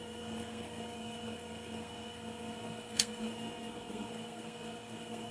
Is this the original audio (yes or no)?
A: no